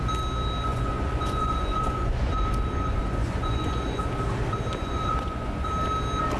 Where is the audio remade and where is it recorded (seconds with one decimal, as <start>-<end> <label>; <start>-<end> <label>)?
0.0-0.7 recorded; 0.7-4.0 remade; 4.0-4.8 recorded; 4.8-5.7 remade; 5.7-6.4 recorded